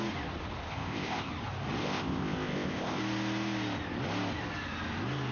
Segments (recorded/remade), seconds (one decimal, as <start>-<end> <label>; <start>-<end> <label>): 0.0-0.7 recorded; 0.7-1.3 remade; 1.3-1.8 recorded; 1.8-3.0 remade; 3.0-5.3 recorded

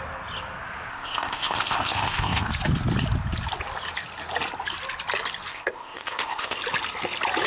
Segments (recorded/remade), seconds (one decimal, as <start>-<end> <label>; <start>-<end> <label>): 0.0-0.9 recorded; 0.9-2.5 remade; 2.5-5.5 recorded; 5.5-6.6 remade; 6.6-7.5 recorded

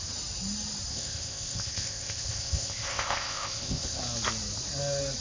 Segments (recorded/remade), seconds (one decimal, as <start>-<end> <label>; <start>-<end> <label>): 0.0-0.9 recorded; 0.9-4.0 remade; 4.0-5.2 recorded

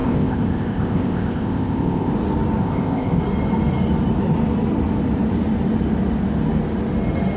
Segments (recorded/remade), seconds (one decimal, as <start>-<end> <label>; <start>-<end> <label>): 0.0-2.1 remade; 2.1-2.6 recorded; 2.6-3.2 remade; 3.2-7.4 recorded